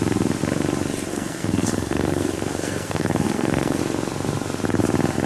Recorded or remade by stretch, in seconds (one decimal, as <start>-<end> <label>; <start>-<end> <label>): 0.0-1.1 recorded; 1.1-3.8 remade; 3.8-5.3 recorded